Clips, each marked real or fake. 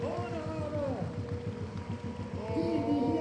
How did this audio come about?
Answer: real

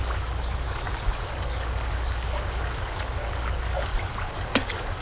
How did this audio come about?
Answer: fake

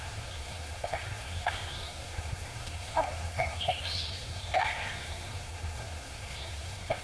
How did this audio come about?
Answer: fake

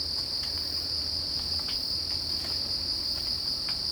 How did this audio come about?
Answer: real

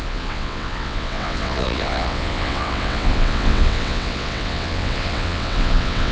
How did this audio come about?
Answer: fake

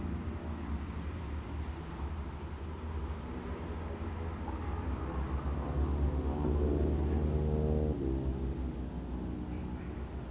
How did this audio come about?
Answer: real